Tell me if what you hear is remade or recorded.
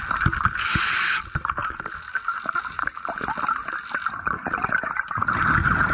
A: recorded